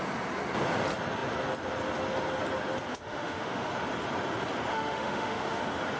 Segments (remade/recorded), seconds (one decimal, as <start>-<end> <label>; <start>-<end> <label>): 0.0-2.9 recorded; 2.9-3.7 remade; 3.7-4.7 recorded; 4.7-5.6 remade; 5.6-6.0 recorded